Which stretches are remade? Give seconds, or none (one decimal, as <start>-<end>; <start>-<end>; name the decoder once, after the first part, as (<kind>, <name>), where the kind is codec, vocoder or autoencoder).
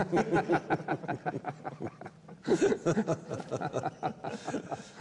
0.9-3.9 (vocoder, BigVGAN v2)